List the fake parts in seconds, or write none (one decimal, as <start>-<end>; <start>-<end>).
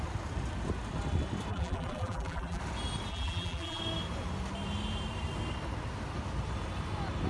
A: 1.5-2.6; 3.1-3.8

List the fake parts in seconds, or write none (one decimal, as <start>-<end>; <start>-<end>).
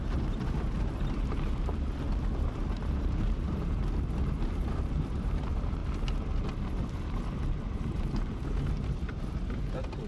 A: 0.0-5.8; 6.6-10.1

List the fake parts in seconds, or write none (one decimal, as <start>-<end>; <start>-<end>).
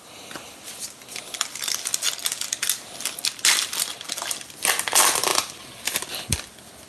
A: 0.0-1.9; 3.9-6.9